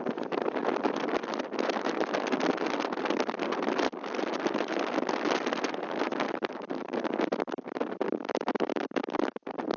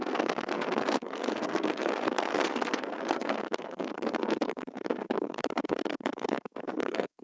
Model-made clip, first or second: second